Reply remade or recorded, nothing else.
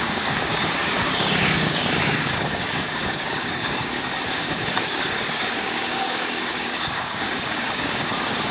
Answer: remade